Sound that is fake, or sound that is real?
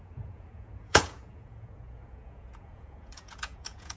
fake